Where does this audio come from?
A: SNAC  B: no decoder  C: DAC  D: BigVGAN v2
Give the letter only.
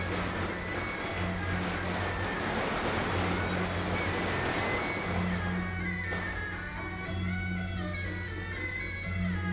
B